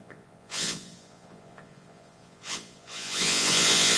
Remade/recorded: remade